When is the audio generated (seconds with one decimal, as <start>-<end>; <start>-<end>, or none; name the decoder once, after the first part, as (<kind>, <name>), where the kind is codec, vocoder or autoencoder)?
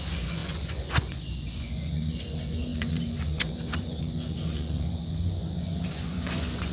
0.0-6.7 (vocoder, Vocos)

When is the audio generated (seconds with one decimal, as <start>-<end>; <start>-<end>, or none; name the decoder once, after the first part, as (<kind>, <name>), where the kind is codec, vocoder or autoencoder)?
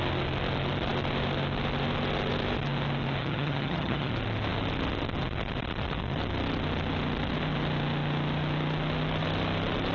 3.2-4.1 (vocoder, HiFi-GAN)